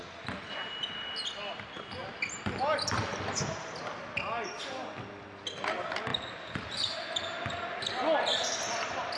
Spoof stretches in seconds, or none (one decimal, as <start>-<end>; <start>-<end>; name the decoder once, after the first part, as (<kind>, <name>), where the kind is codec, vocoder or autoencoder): none